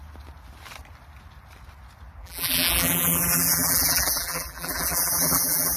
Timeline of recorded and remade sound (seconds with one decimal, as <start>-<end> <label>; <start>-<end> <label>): 0.0-2.2 recorded; 2.2-5.8 remade